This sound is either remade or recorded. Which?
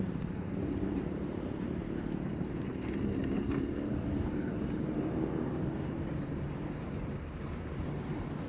remade